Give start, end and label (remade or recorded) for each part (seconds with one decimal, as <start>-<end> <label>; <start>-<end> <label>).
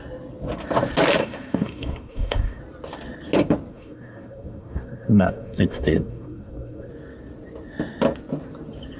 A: 0.0-1.2 recorded; 1.2-2.6 remade; 2.6-3.7 recorded; 3.7-6.9 remade; 6.9-9.0 recorded